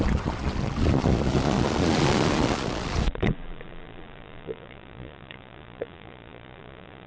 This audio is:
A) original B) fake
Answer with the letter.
B